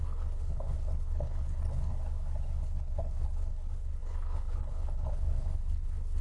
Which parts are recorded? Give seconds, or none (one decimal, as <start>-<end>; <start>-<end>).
1.9-2.6